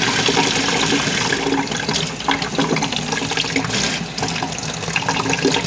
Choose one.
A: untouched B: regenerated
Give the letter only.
A